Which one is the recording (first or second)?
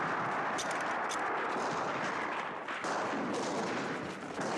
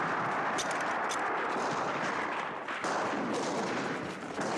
first